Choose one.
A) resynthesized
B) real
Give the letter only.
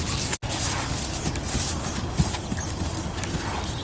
B